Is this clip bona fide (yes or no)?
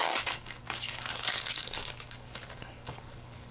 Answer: no